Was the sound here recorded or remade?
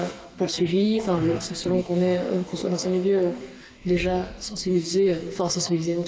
remade